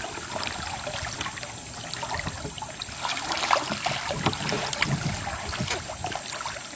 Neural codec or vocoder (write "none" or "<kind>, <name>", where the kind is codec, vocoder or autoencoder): none